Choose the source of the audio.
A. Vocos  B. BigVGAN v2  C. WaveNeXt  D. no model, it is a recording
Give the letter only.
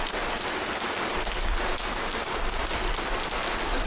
D